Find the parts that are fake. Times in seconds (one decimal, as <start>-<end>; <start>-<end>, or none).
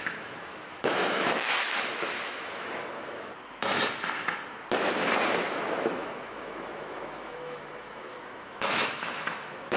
0.0-3.3; 5.7-9.8